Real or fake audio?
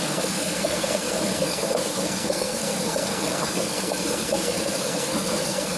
fake